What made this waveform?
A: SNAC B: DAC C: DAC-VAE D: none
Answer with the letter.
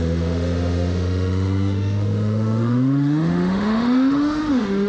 C